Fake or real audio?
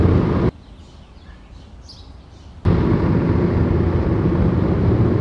real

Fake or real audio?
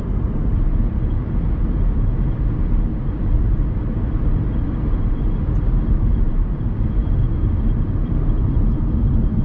fake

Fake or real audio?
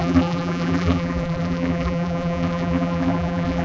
fake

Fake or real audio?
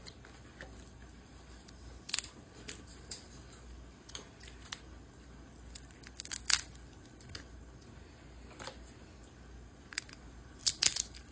real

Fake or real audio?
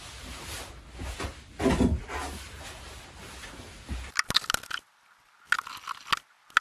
real